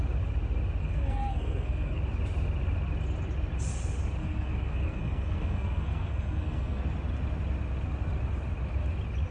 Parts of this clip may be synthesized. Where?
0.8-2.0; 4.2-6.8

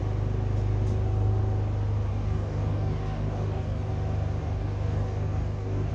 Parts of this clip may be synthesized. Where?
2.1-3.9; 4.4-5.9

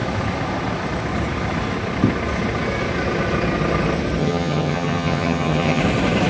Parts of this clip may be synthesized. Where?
4.2-5.8